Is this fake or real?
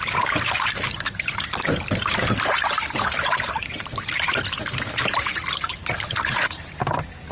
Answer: fake